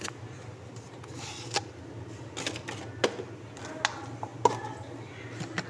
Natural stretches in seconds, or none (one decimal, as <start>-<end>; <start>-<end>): 0.0-5.7